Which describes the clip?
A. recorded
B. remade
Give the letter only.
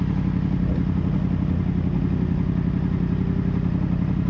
A